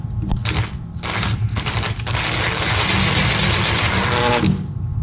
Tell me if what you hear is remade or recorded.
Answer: recorded